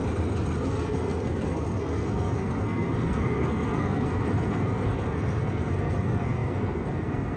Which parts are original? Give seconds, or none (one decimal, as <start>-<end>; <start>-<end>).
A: 0.0-0.6